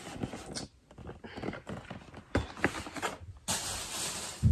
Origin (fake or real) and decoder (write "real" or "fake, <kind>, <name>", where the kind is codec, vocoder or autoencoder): real